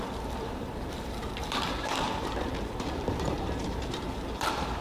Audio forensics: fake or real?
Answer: fake